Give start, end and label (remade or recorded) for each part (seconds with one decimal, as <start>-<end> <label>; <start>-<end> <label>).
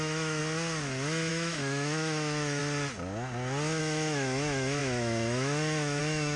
0.0-0.4 remade; 0.4-1.3 recorded; 1.3-2.6 remade; 2.6-3.8 recorded; 3.8-6.4 remade